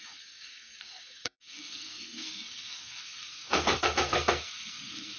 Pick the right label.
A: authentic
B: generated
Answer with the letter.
B